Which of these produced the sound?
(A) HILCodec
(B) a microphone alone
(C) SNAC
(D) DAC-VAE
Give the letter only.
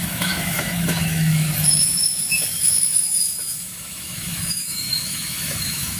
D